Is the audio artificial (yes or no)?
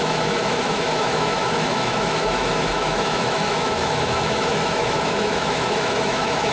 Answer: yes